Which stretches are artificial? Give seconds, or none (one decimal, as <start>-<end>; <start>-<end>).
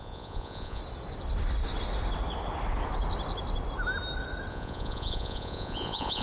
0.0-0.8; 4.5-6.2